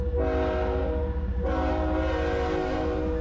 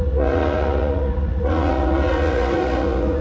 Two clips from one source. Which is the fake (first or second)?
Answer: second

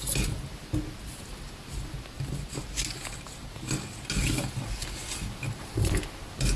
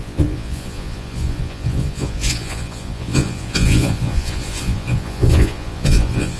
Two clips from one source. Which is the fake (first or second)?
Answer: second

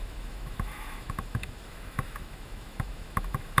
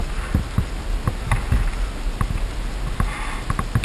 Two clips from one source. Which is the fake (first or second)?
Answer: first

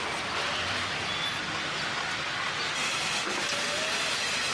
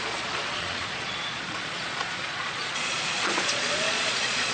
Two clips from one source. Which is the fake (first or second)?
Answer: second